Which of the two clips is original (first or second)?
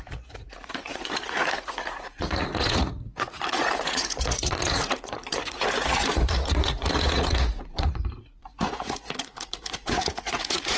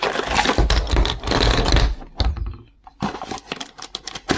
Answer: second